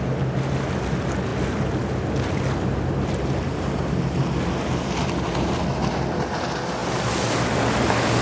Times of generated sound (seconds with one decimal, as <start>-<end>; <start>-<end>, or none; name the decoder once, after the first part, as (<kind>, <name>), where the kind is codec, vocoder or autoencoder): none